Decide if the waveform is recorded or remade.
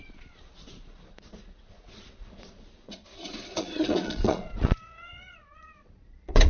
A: remade